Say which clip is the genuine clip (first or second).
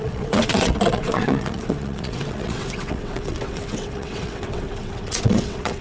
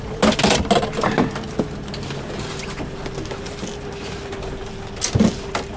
second